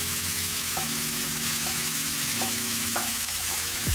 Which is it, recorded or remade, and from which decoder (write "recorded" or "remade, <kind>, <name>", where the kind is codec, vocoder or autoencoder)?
remade, autoencoder, DAC-VAE